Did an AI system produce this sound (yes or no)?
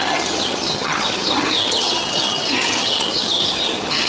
yes